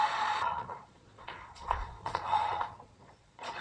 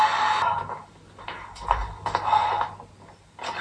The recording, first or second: second